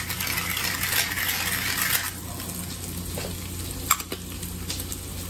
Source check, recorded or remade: recorded